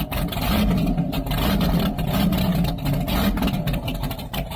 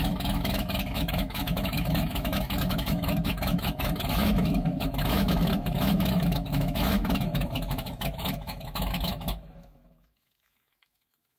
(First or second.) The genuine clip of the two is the first